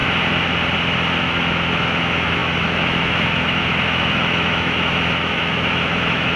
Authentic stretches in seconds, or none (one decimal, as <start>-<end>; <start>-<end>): 0.0-1.2